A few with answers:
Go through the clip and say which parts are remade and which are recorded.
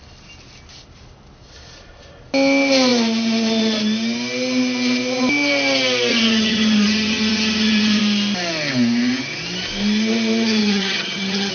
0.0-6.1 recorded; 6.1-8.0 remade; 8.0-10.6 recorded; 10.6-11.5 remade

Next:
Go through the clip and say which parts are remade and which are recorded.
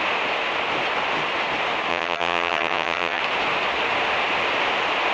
0.0-1.9 recorded; 1.9-3.2 remade; 3.2-5.1 recorded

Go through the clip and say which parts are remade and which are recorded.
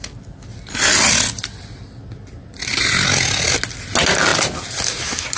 0.0-5.4 recorded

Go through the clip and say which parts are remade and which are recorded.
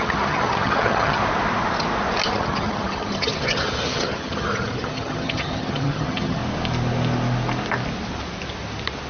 0.0-1.2 remade; 1.2-2.3 recorded; 2.3-6.4 remade; 6.4-9.1 recorded